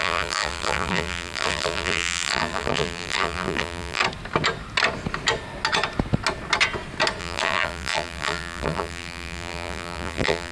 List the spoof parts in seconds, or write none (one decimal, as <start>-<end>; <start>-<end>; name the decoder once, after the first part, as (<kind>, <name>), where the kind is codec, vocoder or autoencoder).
0.0-4.0 (vocoder, BigVGAN v2); 7.2-10.5